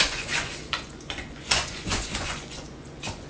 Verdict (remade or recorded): remade